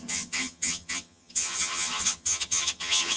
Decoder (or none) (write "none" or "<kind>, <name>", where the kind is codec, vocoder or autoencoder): vocoder, HiFi-GAN